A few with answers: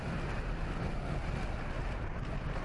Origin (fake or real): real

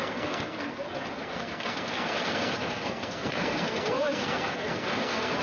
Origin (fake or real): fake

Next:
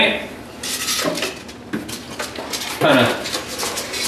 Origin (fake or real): real